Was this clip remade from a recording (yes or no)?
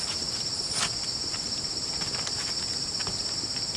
no